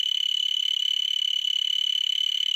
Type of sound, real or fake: fake